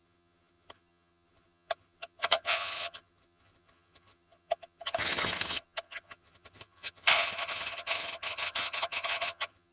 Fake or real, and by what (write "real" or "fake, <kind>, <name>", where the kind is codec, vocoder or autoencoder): fake, vocoder, HiFi-GAN